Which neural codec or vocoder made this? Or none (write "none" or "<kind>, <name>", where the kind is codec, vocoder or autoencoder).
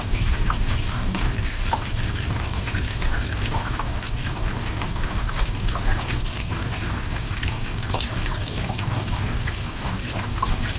codec, DAC